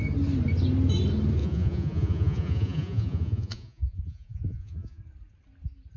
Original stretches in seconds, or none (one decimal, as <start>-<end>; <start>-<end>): 0.0-1.4; 5.0-6.0